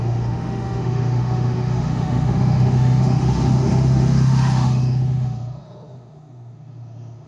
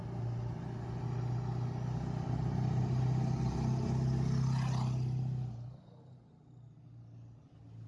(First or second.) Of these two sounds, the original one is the second